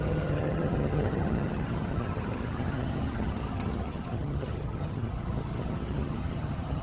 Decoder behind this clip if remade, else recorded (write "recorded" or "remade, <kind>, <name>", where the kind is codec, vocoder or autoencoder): remade, vocoder, HiFi-GAN